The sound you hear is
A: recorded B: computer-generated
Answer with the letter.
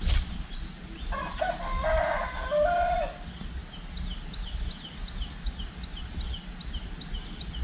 A